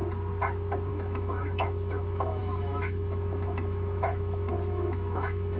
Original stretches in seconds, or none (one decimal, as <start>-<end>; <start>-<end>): 0.0-0.9